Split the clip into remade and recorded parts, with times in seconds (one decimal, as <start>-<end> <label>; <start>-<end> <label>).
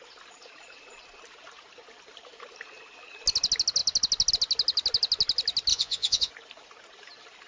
0.0-5.7 recorded; 5.7-6.3 remade; 6.3-7.5 recorded